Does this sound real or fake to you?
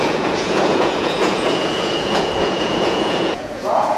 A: fake